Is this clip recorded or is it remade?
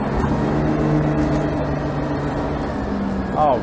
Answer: recorded